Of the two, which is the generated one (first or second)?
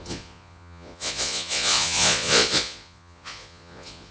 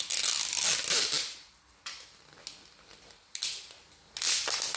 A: first